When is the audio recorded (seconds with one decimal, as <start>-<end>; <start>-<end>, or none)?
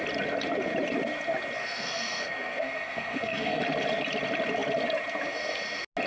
0.0-1.6; 3.6-6.1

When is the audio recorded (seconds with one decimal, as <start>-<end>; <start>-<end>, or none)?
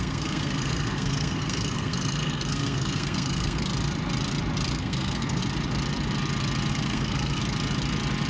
3.7-4.7; 5.4-6.7; 7.4-8.3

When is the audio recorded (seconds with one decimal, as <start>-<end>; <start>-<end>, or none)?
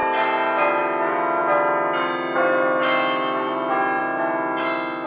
0.0-5.1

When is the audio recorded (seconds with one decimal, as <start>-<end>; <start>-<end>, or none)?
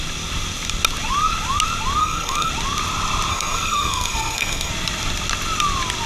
0.0-2.0; 2.5-3.3; 4.7-6.1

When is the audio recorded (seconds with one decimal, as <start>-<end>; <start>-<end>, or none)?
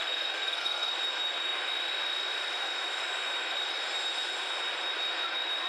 0.9-5.7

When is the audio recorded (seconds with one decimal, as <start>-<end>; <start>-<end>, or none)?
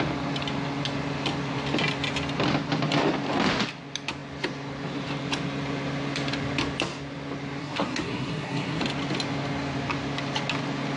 0.0-7.6; 8.8-11.0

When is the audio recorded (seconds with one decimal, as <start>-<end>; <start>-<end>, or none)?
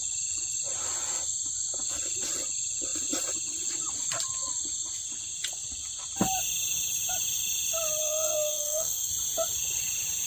0.0-8.0; 9.1-10.3